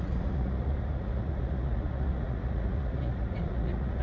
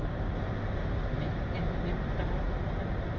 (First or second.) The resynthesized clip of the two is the first